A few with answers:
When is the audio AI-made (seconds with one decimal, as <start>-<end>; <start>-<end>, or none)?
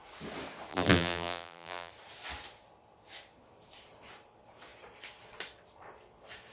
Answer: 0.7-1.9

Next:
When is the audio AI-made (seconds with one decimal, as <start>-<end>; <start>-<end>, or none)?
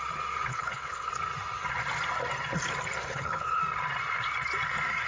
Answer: 0.5-1.1; 3.0-3.6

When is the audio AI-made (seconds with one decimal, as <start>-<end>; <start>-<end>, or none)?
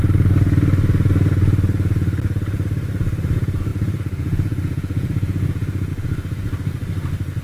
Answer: 3.7-5.9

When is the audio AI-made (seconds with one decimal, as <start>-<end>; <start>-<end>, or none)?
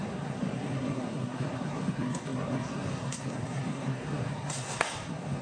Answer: 0.0-5.4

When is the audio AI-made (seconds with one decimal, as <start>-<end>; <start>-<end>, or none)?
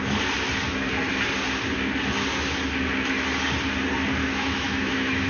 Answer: 4.2-5.3